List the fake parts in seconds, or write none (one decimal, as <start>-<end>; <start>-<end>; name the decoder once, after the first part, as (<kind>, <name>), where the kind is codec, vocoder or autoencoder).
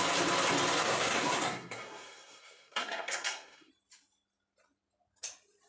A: 0.8-3.7 (codec, SNAC)